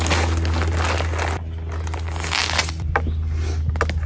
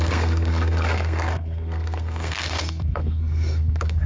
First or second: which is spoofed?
second